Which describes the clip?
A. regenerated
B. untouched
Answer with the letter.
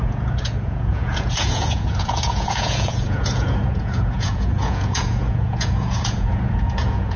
A